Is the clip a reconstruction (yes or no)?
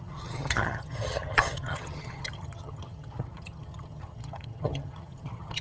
yes